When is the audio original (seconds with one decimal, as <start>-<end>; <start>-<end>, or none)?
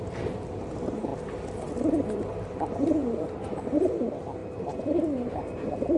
1.1-2.3